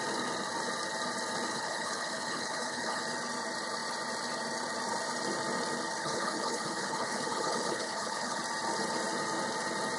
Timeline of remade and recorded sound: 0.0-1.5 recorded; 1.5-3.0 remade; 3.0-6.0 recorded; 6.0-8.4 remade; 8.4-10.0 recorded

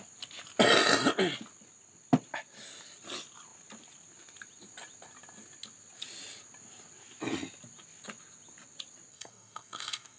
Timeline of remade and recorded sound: 0.0-9.1 recorded; 9.1-10.2 remade